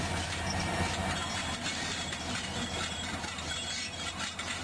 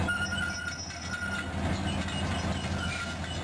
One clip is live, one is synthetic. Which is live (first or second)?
second